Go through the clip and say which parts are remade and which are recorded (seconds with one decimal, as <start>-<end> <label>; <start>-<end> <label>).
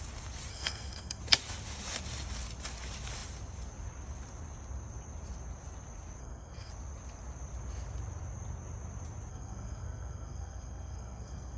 0.0-0.5 recorded; 0.5-1.2 remade; 1.2-6.2 recorded; 6.2-6.7 remade; 6.7-9.3 recorded; 9.3-11.6 remade